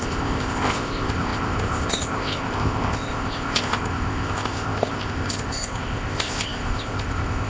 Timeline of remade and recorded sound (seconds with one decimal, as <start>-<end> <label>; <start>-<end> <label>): 0.0-7.5 remade